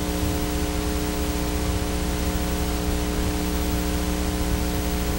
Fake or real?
real